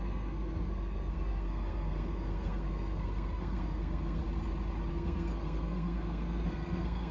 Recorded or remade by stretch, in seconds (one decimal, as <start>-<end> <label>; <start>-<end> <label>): 0.0-4.2 remade; 4.2-4.9 recorded; 4.9-7.1 remade